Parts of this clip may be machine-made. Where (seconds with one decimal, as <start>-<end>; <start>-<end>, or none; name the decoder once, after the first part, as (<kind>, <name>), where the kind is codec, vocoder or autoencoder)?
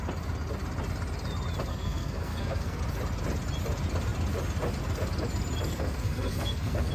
1.7-2.8 (codec, SNAC); 5.7-6.9